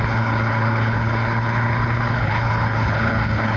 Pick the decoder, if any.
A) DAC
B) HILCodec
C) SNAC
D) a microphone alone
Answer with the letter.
B